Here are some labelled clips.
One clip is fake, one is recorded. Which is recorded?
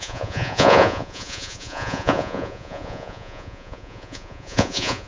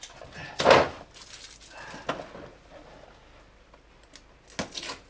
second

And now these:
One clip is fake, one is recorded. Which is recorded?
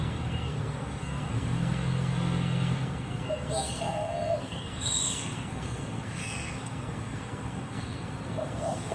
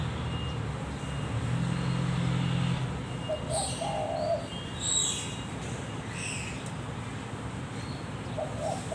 second